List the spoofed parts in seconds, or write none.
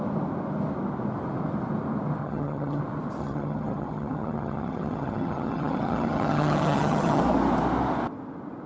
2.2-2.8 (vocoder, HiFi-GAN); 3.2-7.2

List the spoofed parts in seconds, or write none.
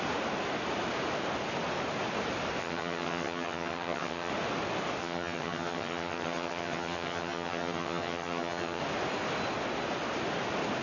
2.6-4.3 (vocoder, HiFi-GAN); 5.0-8.8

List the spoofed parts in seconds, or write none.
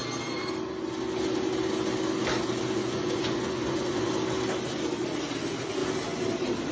2.8-4.1 (vocoder, Vocos)